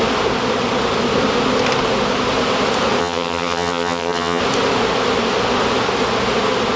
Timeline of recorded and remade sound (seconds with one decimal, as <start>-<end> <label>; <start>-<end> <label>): 0.0-3.0 recorded; 3.0-4.4 remade; 4.4-6.8 recorded